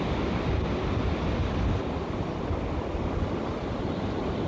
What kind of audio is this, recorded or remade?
recorded